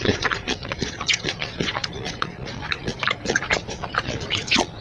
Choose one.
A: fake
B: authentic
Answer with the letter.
A